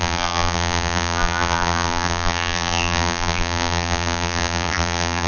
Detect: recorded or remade remade